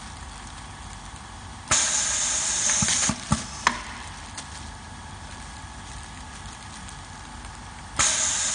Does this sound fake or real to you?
real